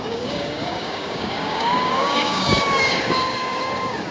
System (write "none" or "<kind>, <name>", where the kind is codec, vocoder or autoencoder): codec, DAC